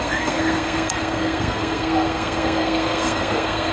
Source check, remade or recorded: remade